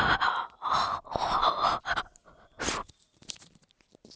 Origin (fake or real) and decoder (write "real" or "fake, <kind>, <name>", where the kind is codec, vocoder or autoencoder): real